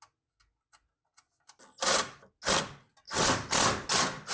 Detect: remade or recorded recorded